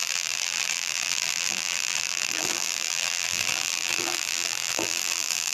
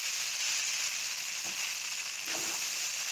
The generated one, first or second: first